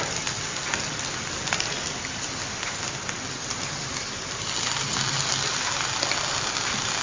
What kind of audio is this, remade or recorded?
recorded